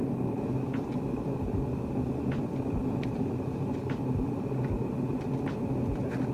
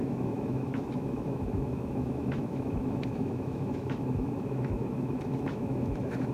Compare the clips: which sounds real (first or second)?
first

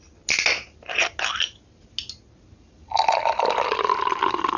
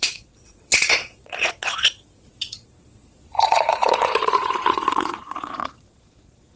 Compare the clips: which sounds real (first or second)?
first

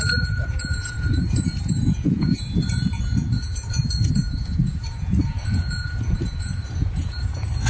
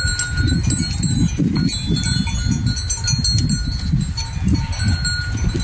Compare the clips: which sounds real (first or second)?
second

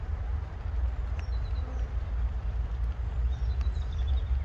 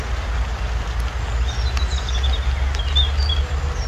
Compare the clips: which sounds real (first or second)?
second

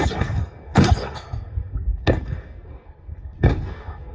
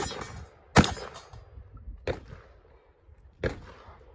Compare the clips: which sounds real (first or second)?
second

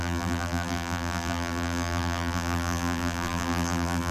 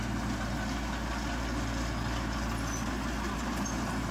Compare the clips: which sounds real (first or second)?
second